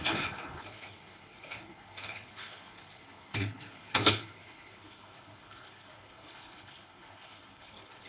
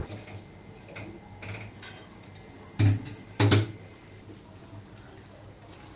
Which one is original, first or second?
second